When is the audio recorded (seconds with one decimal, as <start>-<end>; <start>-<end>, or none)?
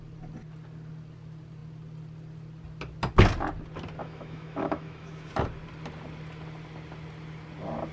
0.0-4.0; 5.3-7.9